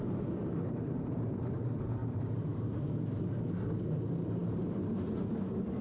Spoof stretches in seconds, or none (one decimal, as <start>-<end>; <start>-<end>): 0.0-5.8